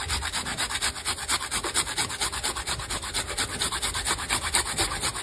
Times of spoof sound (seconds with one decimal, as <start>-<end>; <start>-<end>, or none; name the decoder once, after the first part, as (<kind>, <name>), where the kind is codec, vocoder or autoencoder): none